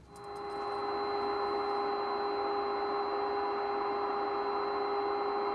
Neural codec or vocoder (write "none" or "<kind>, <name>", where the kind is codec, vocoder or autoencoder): none